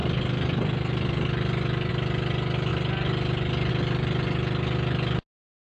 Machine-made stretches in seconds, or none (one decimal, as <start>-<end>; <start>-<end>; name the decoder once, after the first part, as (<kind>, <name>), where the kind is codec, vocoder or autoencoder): none